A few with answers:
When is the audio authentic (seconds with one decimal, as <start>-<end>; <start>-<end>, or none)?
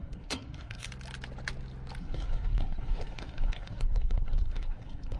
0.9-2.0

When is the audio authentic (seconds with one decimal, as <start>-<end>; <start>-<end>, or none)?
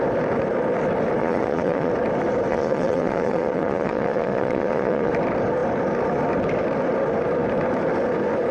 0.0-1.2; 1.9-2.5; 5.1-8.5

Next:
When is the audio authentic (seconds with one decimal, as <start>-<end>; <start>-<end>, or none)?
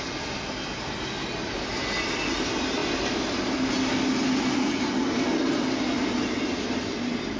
0.0-7.4